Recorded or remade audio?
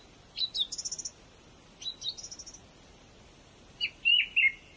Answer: recorded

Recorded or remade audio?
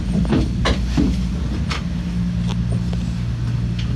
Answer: recorded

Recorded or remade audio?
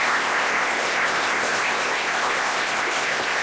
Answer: remade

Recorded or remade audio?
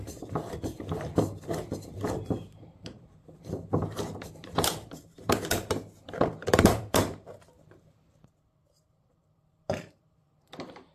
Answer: remade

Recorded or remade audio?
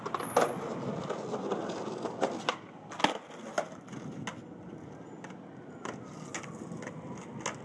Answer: recorded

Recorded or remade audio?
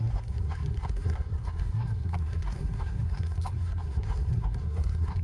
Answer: remade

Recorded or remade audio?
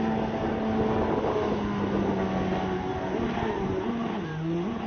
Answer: recorded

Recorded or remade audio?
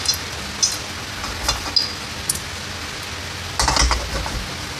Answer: recorded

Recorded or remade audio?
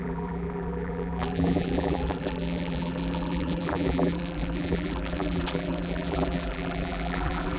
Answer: remade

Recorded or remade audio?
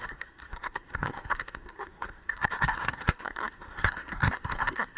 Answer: remade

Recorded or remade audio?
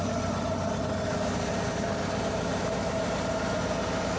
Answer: recorded